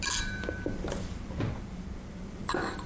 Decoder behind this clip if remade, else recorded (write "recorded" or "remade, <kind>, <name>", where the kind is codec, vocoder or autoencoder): remade, vocoder, BigVGAN v2